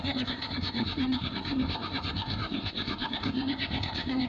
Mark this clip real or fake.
fake